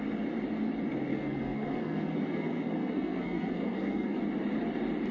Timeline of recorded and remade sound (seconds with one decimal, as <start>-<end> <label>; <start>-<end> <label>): 0.0-1.1 recorded; 1.1-4.2 remade; 4.2-5.1 recorded